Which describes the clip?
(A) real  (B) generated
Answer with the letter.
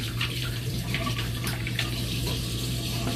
B